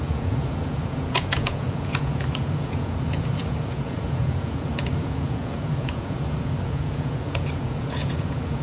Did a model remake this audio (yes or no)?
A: yes